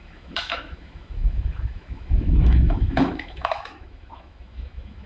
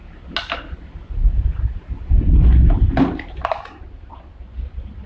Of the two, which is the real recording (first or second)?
second